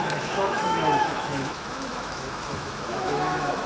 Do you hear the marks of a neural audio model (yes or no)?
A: yes